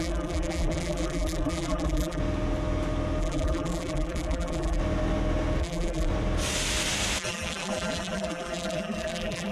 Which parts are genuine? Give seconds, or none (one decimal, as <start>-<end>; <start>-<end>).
2.2-3.2; 4.8-5.6; 6.1-7.2